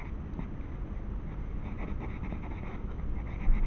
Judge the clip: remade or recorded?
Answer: recorded